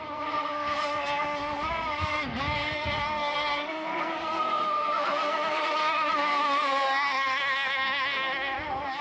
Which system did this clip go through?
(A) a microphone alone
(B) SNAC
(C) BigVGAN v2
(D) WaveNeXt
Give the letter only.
B